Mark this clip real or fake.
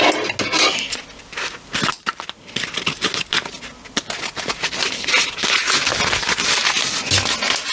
real